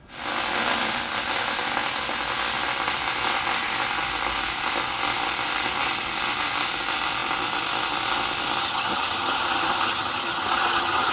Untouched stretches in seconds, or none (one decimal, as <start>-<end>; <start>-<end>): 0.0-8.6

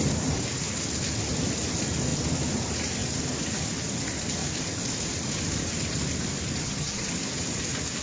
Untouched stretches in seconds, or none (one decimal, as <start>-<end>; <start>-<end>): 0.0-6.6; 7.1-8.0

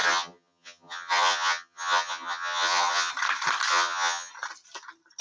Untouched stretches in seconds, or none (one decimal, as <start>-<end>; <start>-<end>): 3.1-3.7; 4.3-5.2

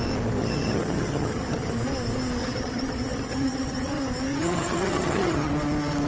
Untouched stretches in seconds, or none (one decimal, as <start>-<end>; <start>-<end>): 0.0-0.4; 1.7-2.4; 3.9-4.3; 5.5-6.1

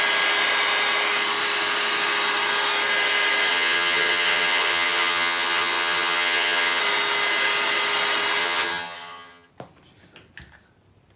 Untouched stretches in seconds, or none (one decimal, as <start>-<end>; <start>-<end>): 0.0-3.5; 6.8-8.4; 9.5-11.2

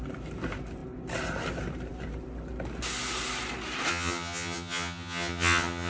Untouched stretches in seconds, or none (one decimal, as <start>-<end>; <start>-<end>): 0.0-3.9

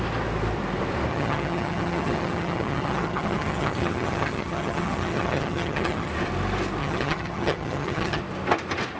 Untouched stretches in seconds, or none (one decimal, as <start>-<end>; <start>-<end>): 0.0-1.1; 6.1-6.8; 8.2-9.0

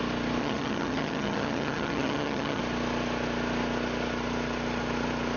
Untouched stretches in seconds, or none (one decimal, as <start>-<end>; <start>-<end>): 0.0-0.4; 2.6-5.4